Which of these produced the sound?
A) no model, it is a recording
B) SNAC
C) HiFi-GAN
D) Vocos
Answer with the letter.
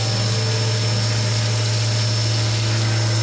A